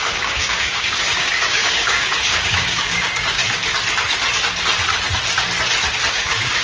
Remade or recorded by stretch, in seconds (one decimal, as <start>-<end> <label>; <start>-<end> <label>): 0.0-3.4 remade; 3.4-6.1 recorded; 6.1-6.6 remade